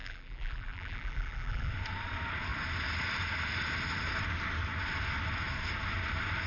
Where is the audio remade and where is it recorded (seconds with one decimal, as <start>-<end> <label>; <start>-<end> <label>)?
0.0-1.7 remade; 1.7-6.5 recorded